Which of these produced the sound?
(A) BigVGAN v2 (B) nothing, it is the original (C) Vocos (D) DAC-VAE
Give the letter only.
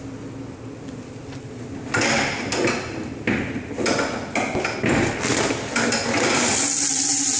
B